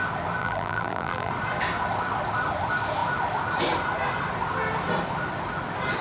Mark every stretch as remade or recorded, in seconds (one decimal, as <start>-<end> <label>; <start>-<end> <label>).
0.0-0.4 recorded; 0.4-1.3 remade; 1.3-6.0 recorded